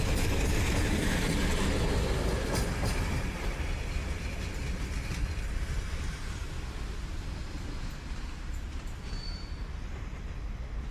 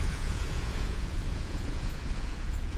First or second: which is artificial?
second